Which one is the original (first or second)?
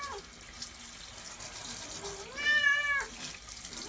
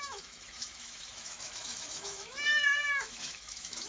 first